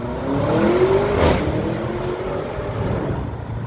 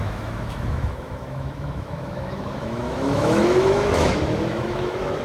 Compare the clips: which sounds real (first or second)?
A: first